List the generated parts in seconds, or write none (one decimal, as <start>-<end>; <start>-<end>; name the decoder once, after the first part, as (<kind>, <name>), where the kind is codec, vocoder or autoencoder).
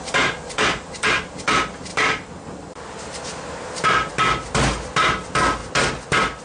none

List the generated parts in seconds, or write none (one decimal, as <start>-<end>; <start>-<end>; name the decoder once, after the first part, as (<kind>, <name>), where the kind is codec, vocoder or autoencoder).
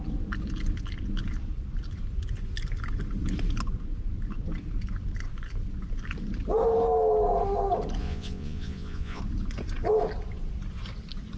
8.0-9.2 (vocoder, Vocos)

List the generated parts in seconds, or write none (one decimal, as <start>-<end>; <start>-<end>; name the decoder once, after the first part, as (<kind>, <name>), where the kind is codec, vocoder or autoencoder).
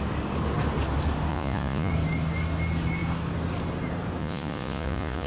1.3-1.9 (vocoder, Vocos); 4.2-5.3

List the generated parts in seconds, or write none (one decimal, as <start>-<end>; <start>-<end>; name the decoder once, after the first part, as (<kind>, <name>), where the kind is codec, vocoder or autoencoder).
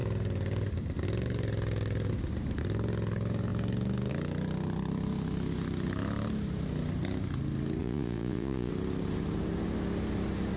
7.8-8.7 (vocoder, Vocos)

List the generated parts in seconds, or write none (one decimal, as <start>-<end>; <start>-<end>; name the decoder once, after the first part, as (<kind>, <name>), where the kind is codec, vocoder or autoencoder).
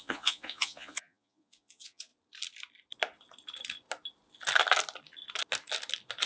0.0-2.1 (vocoder, Vocos)